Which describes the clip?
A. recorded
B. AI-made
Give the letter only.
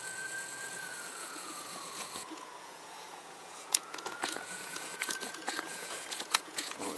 B